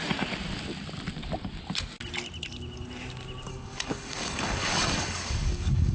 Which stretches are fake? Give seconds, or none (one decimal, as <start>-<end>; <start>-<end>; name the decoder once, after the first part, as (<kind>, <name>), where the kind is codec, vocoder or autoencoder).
3.5-5.9 (codec, DAC)